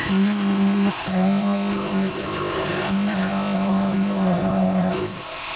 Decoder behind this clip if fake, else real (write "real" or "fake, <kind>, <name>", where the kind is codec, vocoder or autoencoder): fake, codec, ZipCodec